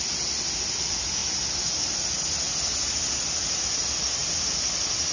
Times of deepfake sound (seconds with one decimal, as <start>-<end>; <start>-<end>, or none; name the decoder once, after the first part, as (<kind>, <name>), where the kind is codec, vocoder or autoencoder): none